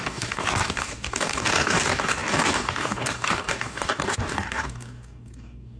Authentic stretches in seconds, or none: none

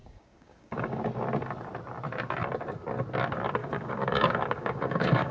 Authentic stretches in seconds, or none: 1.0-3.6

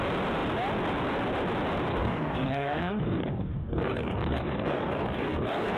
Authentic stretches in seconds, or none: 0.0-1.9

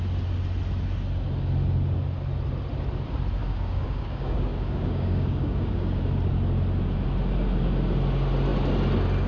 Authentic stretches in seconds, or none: 0.0-3.4; 6.0-9.3

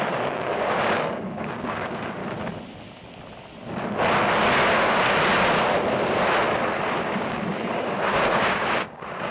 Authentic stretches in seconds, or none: 2.2-7.0

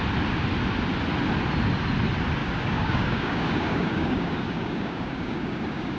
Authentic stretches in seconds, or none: 0.0-2.4